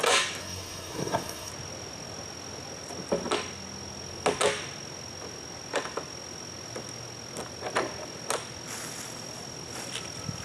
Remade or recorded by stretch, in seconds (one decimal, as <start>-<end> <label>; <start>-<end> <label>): 0.0-0.4 recorded; 0.4-1.5 remade; 1.5-10.4 recorded